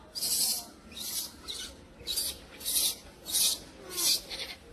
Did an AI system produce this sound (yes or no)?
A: no